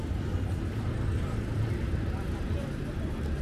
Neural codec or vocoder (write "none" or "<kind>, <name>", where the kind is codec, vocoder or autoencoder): none